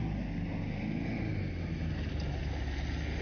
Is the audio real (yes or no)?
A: yes